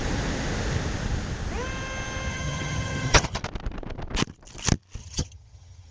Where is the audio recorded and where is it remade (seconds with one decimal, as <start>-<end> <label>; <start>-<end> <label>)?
0.0-2.3 recorded; 2.3-3.4 remade; 3.4-5.0 recorded; 5.0-5.9 remade